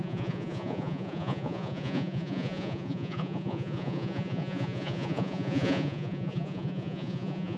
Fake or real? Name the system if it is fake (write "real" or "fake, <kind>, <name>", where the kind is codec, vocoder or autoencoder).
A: fake, vocoder, Vocos